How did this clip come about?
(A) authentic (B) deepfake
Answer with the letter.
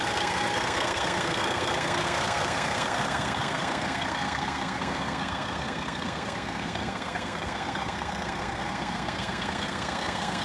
B